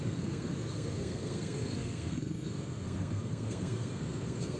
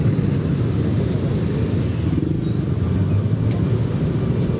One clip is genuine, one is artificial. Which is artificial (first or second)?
first